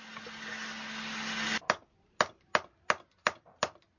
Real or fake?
real